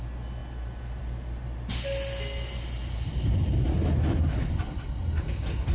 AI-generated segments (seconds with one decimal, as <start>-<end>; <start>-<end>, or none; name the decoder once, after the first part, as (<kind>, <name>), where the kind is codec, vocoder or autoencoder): none